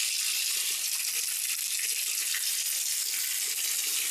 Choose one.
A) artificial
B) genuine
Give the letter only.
B